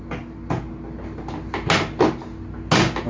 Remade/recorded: recorded